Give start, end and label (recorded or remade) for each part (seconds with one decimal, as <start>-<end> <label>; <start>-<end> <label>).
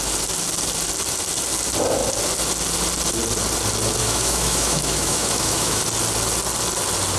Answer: 0.0-4.0 recorded; 4.0-5.8 remade; 5.8-7.2 recorded